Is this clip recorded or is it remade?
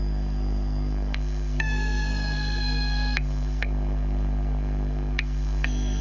remade